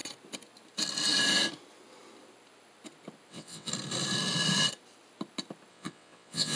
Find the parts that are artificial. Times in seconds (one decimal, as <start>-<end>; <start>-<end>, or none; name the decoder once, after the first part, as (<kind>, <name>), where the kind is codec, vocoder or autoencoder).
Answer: 3.3-3.7 (vocoder, WaveNeXt); 5.7-6.6